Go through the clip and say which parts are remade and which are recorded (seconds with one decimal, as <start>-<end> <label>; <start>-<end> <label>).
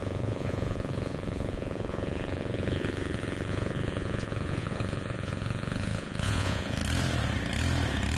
0.0-6.8 remade; 6.8-8.2 recorded